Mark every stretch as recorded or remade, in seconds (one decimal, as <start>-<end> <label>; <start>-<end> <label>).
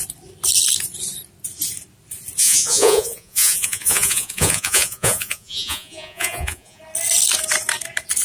0.0-2.4 recorded; 2.4-6.8 remade; 6.8-8.2 recorded